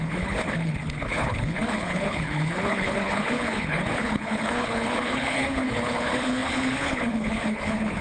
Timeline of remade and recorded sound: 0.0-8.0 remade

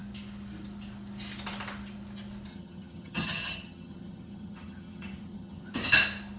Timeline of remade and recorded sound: 0.0-2.5 recorded; 2.5-5.7 remade; 5.7-6.4 recorded